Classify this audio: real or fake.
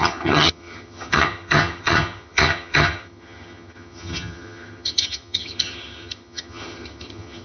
fake